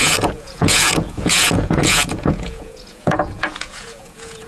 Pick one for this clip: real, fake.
fake